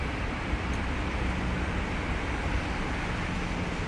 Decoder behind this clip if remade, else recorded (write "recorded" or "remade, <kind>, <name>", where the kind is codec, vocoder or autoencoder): recorded